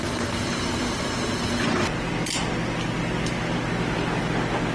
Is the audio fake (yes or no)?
no